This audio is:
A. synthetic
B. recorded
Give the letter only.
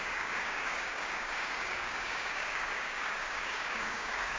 A